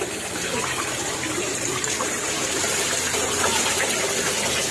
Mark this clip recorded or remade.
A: remade